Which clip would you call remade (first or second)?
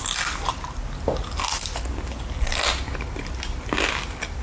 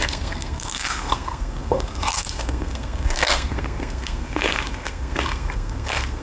second